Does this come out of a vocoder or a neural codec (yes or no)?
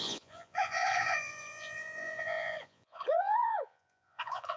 yes